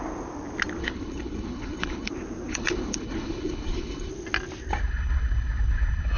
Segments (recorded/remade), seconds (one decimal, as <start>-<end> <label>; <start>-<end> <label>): 0.0-0.8 recorded; 0.8-2.1 remade; 2.1-2.5 recorded; 2.5-4.1 remade; 4.1-4.7 recorded; 4.7-6.2 remade